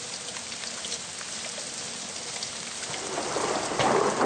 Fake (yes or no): no